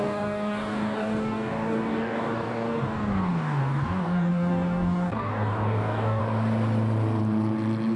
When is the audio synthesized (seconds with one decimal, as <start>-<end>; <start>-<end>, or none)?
0.0-6.2